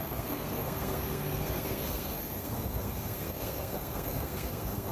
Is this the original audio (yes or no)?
no